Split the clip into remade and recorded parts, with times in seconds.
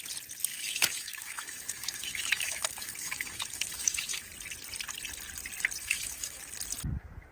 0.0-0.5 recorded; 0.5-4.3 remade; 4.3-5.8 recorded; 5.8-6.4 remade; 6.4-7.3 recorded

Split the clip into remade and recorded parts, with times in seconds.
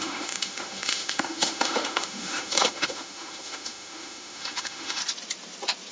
0.0-5.0 remade; 5.0-5.9 recorded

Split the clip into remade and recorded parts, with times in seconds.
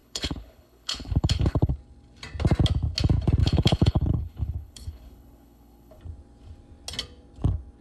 0.0-1.7 remade; 1.7-3.4 recorded; 3.4-6.0 remade; 6.0-7.8 recorded